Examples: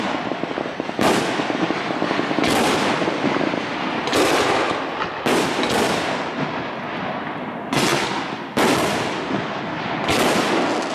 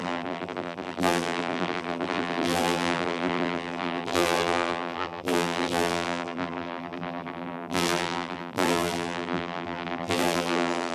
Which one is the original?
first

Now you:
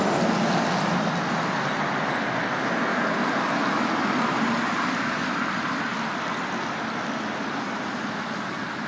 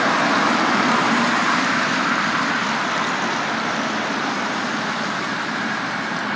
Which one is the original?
first